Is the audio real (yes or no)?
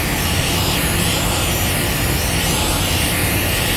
no